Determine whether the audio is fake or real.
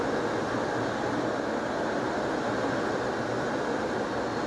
real